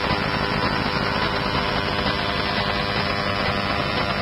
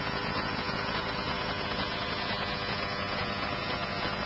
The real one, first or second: first